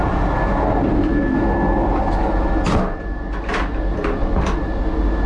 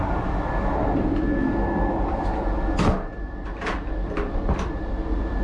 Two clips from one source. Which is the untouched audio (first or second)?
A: first